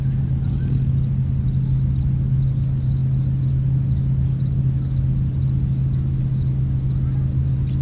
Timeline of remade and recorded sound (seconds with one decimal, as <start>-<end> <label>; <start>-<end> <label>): 0.0-7.8 recorded